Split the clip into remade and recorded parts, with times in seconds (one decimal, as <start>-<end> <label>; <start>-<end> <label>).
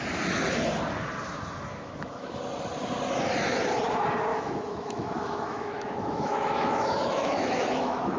0.0-1.7 recorded; 1.7-2.4 remade; 2.4-4.3 recorded; 4.3-8.2 remade